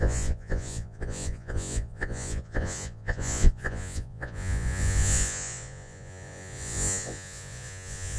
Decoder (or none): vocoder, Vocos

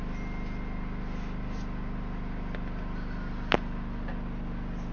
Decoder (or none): none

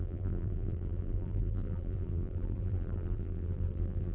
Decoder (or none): vocoder, BigVGAN v2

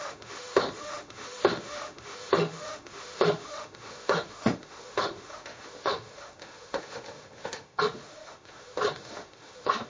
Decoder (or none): autoencoder, DAC-VAE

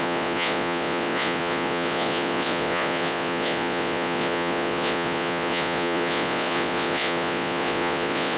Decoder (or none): vocoder, Vocos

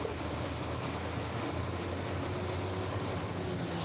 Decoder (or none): none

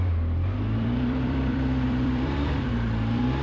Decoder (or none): vocoder, BigVGAN v2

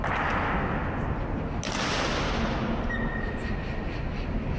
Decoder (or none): none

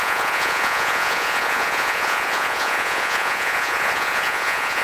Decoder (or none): vocoder, Vocos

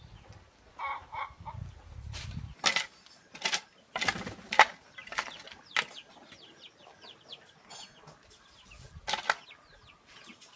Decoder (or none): none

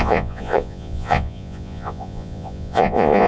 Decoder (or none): vocoder, Vocos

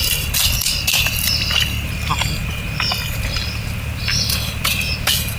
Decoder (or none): none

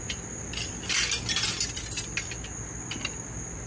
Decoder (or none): none